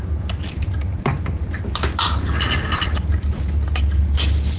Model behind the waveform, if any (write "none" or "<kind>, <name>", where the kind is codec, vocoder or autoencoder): none